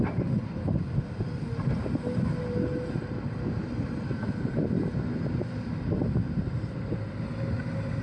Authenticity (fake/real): real